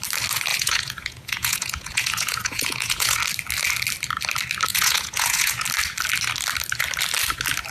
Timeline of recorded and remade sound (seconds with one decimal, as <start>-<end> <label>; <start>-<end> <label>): 0.0-0.5 recorded; 0.5-3.2 remade; 3.2-4.7 recorded; 4.7-5.6 remade; 5.6-7.7 recorded